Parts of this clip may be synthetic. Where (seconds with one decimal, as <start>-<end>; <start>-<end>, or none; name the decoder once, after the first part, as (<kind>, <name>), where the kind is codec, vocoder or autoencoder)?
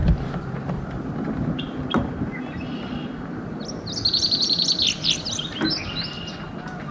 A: 0.0-0.9 (vocoder, BigVGAN v2)